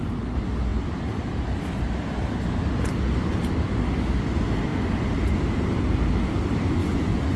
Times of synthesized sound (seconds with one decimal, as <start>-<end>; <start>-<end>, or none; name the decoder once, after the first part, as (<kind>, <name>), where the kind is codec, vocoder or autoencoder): 6.8-7.4 (vocoder, Vocos)